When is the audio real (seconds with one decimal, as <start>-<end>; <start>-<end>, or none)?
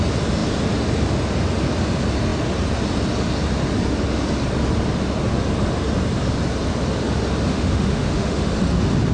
0.0-7.5; 8.5-9.1